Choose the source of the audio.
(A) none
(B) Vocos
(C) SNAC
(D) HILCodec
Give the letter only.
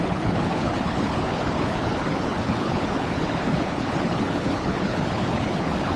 D